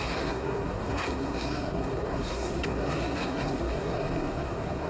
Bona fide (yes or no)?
no